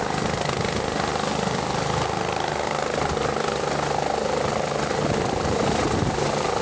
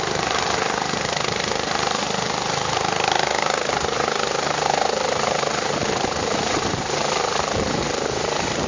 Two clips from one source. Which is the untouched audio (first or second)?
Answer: first